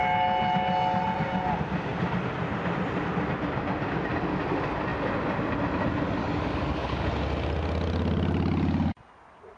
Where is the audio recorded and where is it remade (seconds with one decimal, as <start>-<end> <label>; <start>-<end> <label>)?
0.0-6.2 recorded; 6.2-7.1 remade; 7.1-9.6 recorded

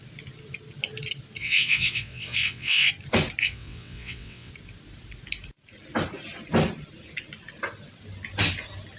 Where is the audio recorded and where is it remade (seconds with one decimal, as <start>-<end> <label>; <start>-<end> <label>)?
0.0-1.4 recorded; 1.4-2.9 remade; 2.9-3.4 recorded; 3.4-4.5 remade; 4.5-9.0 recorded

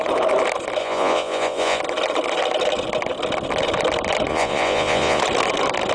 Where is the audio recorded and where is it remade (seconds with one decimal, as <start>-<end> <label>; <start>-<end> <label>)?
0.0-0.8 recorded; 0.8-1.8 remade; 1.8-4.3 recorded; 4.3-5.2 remade; 5.2-5.9 recorded

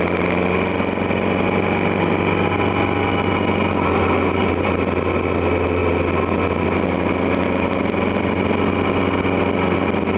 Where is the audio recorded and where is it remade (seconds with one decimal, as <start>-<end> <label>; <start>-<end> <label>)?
0.0-10.2 recorded

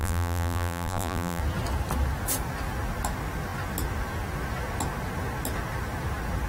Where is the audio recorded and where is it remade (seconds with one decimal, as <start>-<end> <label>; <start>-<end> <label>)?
0.0-1.4 remade; 1.4-6.5 recorded